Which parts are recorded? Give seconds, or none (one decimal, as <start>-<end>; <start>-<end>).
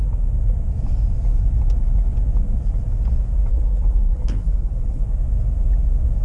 0.0-3.5; 5.0-6.2